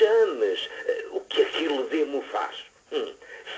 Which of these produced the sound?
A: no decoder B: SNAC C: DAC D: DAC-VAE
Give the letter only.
A